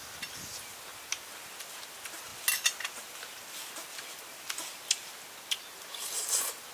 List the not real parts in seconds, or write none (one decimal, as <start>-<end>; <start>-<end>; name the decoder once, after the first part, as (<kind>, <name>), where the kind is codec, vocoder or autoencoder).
none

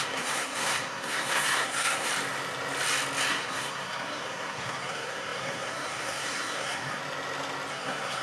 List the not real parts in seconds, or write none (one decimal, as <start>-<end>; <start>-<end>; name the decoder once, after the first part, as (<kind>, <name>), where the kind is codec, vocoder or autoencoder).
0.0-2.1 (codec, SNAC); 3.3-7.0; 7.7-8.2

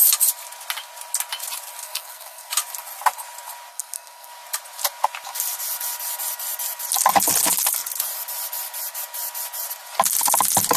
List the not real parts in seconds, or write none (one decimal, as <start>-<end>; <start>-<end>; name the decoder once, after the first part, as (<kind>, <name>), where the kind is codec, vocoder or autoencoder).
1.8-2.5 (codec, SNAC); 3.7-4.3

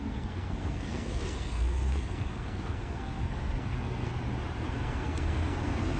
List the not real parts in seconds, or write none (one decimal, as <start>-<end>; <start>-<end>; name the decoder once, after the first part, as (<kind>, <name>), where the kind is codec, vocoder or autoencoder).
0.0-4.1 (codec, SNAC); 4.7-6.0

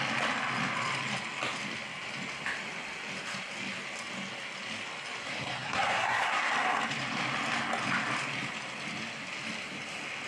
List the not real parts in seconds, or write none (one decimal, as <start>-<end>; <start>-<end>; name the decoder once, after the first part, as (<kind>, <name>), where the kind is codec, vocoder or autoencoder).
5.2-6.5 (codec, SNAC)

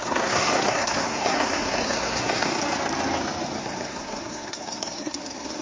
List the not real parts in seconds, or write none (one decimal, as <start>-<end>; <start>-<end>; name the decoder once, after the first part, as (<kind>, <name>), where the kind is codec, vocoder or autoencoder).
0.0-2.6 (codec, SNAC); 3.6-5.6